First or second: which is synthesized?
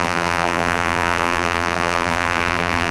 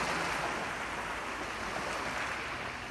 first